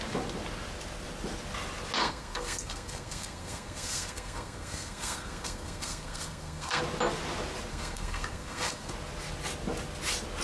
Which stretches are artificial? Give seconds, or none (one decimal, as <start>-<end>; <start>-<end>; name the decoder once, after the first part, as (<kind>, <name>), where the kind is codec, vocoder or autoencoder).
2.0-6.8 (codec, SNAC); 7.7-8.9